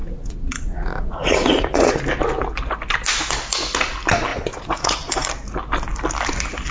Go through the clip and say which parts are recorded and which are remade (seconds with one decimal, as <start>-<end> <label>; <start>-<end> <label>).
0.0-2.0 remade; 2.0-4.3 recorded; 4.3-5.3 remade; 5.3-6.7 recorded